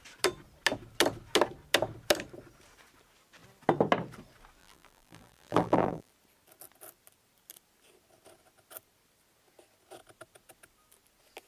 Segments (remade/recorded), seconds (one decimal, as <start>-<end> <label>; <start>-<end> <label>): 0.0-4.6 recorded; 4.6-6.1 remade; 6.1-11.5 recorded

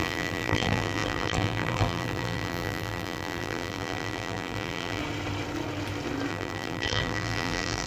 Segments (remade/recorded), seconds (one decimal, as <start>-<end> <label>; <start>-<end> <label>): 0.0-5.0 remade; 5.0-6.3 recorded; 6.3-7.9 remade

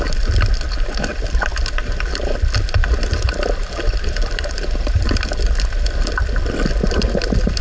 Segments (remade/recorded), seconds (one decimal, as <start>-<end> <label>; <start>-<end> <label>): 0.0-3.6 recorded; 3.6-5.0 remade; 5.0-6.8 recorded; 6.8-7.6 remade

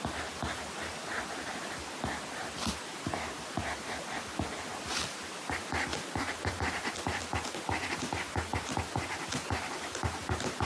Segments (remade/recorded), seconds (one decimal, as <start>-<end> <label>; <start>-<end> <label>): 0.0-5.9 recorded; 5.9-7.2 remade; 7.2-8.5 recorded; 8.5-9.9 remade; 9.9-10.7 recorded